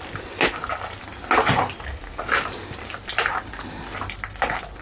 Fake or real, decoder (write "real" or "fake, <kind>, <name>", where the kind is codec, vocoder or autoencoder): real